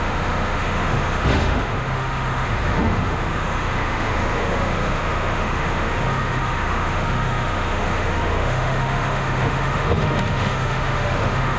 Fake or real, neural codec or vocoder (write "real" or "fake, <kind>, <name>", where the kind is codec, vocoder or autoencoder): fake, autoencoder, DAC-VAE